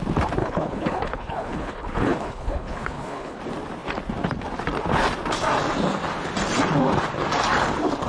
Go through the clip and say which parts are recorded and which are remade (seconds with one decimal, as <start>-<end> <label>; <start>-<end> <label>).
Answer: 0.0-0.4 recorded; 0.4-3.4 remade; 3.4-8.1 recorded